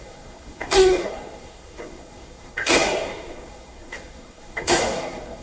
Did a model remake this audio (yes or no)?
yes